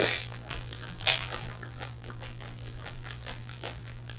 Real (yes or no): no